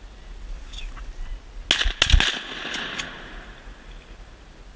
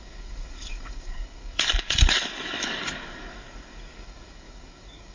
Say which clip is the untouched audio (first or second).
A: first